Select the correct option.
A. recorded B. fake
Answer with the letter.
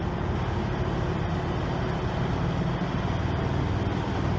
A